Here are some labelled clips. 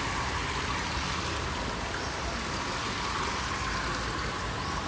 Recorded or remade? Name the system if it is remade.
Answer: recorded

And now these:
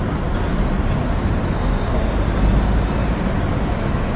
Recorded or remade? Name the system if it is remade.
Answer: recorded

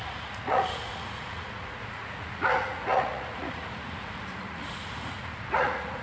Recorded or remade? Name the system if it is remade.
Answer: remade, vocoder, Vocos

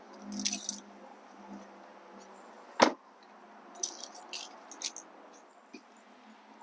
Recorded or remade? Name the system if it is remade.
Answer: recorded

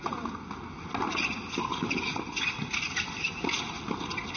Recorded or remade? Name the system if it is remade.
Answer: recorded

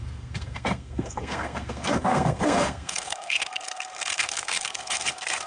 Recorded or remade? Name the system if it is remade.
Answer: remade, codec, SNAC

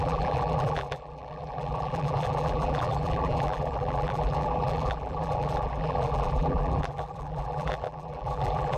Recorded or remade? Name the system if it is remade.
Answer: remade, vocoder, BigVGAN v2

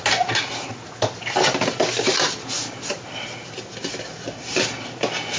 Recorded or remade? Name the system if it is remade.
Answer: recorded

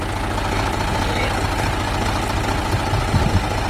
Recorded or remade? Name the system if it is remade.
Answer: recorded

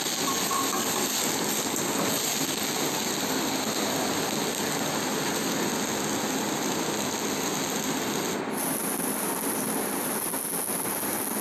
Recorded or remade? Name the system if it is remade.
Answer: recorded